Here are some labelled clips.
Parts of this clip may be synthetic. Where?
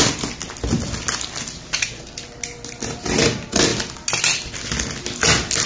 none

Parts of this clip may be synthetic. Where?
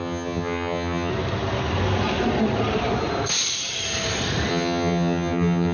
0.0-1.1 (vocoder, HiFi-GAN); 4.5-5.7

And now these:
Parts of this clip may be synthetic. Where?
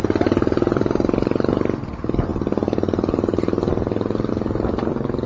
none